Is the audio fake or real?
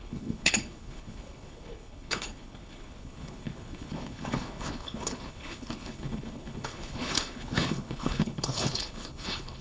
fake